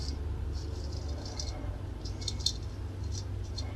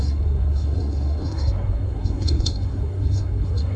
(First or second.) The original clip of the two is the first